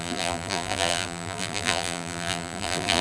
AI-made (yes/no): yes